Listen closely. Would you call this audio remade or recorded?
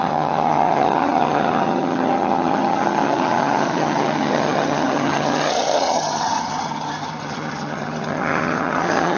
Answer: remade